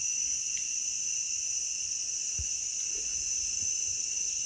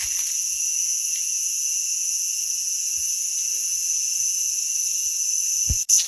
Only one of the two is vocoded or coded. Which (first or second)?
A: second